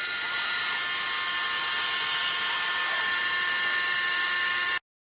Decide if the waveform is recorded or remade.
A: recorded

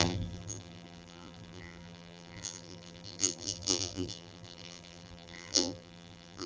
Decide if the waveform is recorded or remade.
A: remade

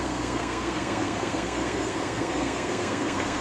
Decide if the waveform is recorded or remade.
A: remade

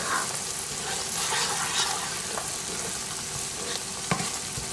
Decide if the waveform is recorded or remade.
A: recorded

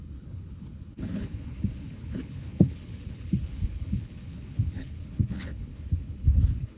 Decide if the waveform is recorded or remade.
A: remade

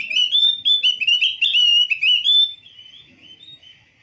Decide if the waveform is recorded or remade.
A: recorded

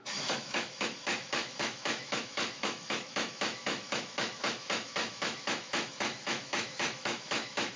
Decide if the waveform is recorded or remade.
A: remade